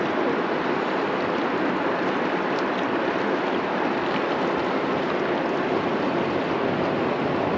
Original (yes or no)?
yes